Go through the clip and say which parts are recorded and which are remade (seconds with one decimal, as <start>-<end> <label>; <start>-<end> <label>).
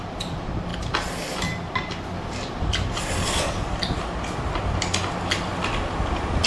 0.0-6.5 recorded